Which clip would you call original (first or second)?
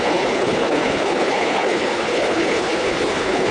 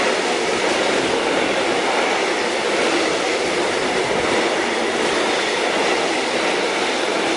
second